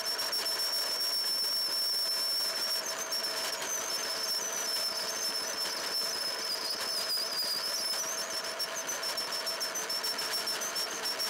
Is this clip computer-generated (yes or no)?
no